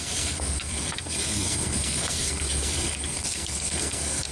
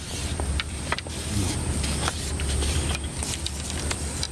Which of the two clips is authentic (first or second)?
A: second